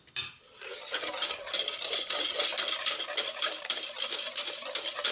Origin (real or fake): real